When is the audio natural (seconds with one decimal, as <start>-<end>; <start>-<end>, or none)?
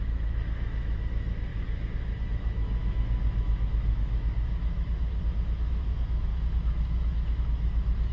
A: none